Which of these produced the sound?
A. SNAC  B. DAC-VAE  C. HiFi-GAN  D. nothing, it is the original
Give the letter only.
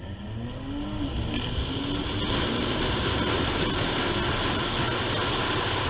D